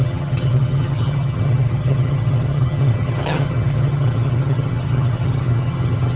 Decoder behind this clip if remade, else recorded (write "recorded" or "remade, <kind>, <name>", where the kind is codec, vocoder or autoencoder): remade, vocoder, HiFi-GAN